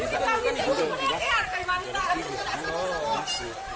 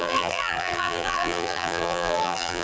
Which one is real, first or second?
first